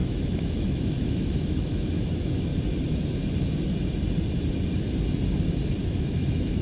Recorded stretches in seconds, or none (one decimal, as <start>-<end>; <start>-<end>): 2.5-5.8